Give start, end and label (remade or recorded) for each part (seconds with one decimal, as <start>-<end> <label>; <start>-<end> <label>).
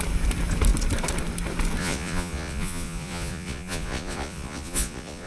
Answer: 0.0-1.8 recorded; 1.8-5.3 remade